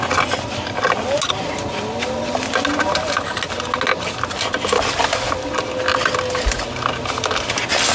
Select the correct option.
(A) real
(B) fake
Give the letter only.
A